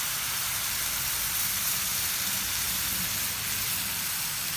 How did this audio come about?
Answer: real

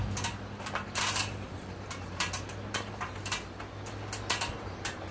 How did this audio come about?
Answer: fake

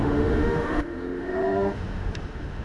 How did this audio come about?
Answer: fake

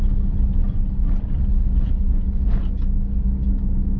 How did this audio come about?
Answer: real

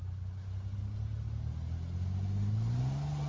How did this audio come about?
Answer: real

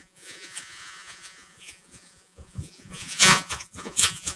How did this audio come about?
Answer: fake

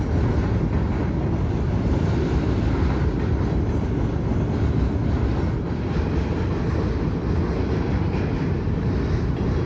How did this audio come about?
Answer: real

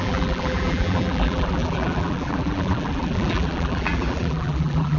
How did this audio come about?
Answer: fake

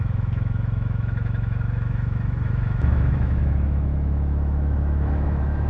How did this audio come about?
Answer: fake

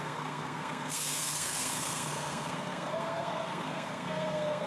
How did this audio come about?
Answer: fake